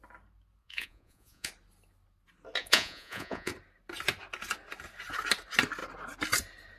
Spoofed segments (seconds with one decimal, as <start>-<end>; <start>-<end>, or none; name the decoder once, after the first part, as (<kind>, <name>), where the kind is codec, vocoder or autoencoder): 0.6-1.5 (vocoder, Vocos); 2.6-3.5